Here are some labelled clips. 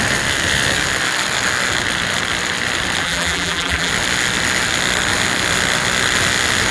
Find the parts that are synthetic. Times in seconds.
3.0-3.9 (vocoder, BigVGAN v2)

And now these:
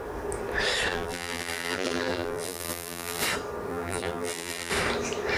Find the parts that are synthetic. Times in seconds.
0.9-3.2 (vocoder, BigVGAN v2); 3.7-4.7

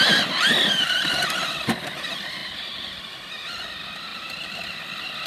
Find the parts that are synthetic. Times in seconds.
2.4-3.0 (vocoder, BigVGAN v2)